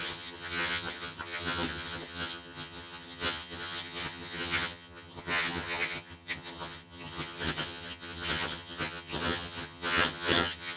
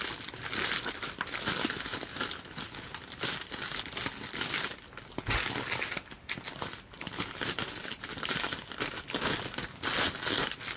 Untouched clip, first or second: second